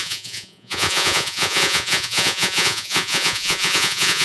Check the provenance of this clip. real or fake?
fake